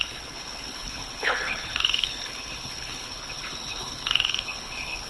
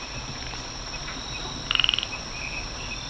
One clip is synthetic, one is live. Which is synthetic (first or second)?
first